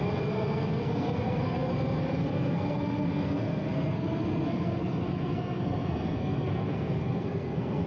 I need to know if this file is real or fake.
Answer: fake